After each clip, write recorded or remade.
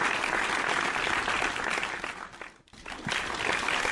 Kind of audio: recorded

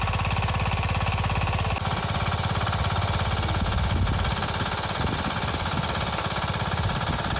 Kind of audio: recorded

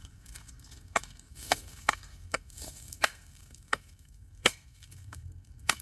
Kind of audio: remade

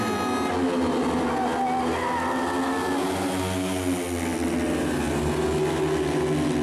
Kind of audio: recorded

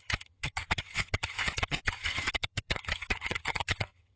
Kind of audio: remade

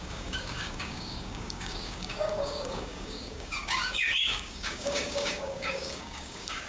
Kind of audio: remade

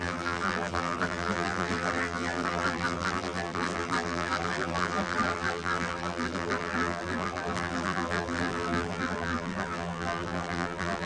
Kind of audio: remade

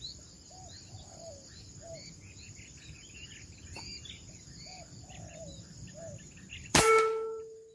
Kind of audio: remade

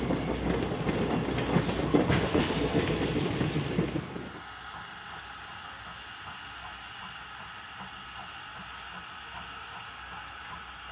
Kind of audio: recorded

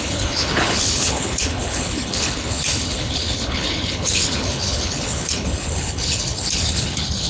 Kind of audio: remade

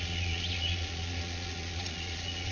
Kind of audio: remade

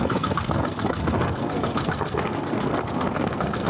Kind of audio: remade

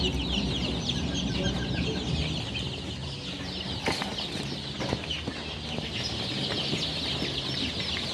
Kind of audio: recorded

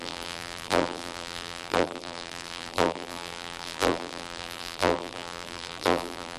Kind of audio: remade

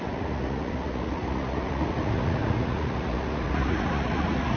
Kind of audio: remade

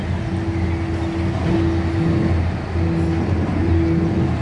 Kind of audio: recorded